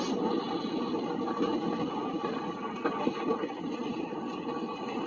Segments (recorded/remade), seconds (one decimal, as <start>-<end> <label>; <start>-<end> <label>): 0.0-5.1 recorded